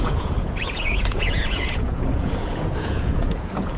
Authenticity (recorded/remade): remade